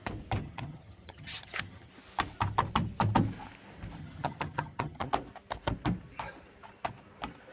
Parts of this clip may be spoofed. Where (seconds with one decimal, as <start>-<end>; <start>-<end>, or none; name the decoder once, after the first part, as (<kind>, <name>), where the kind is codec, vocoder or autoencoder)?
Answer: 0.4-1.9 (vocoder, HiFi-GAN); 4.0-5.1